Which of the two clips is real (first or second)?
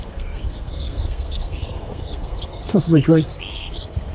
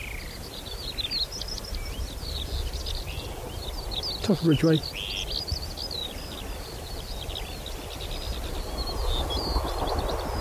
second